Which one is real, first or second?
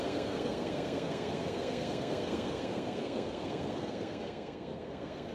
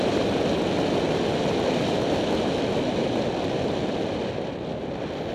second